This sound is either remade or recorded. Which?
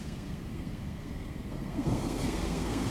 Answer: remade